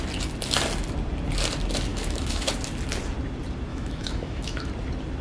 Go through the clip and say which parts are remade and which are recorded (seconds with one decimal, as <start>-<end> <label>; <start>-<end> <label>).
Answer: 0.0-1.9 recorded; 1.9-2.5 remade; 2.5-3.7 recorded; 3.7-4.7 remade; 4.7-5.2 recorded